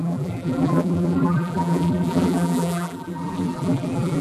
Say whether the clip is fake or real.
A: fake